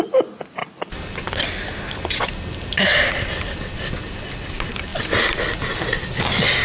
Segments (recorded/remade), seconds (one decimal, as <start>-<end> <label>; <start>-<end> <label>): 0.0-6.6 recorded